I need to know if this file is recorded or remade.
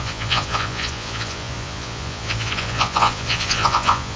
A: remade